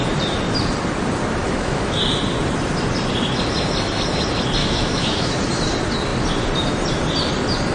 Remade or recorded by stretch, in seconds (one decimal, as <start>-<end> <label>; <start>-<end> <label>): 0.0-1.4 recorded; 1.4-2.0 remade; 2.0-4.6 recorded; 4.6-5.3 remade; 5.3-7.7 recorded